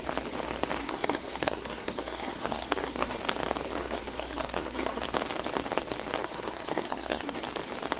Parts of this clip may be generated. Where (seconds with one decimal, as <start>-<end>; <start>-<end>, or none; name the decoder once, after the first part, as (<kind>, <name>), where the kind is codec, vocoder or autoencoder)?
0.8-3.2 (codec, SNAC); 3.8-5.0; 6.2-7.4